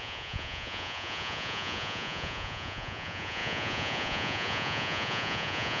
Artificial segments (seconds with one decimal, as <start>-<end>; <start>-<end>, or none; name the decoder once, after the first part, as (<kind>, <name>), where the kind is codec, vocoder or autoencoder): 0.0-5.8 (vocoder, Vocos)